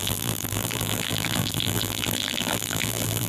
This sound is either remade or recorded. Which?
remade